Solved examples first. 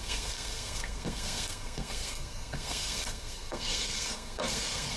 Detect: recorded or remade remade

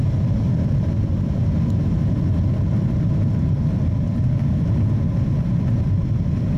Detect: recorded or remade recorded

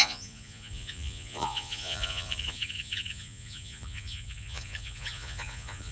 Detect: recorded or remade remade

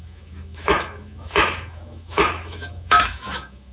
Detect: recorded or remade remade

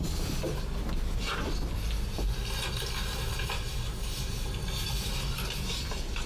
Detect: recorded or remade remade